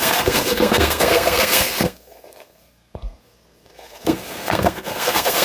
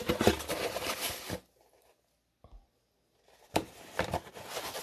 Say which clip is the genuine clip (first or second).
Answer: second